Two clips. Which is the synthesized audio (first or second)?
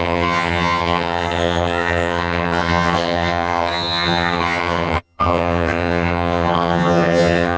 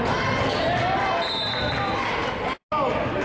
first